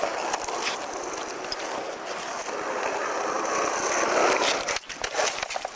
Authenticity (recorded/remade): recorded